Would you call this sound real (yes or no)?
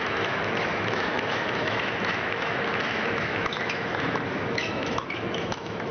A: no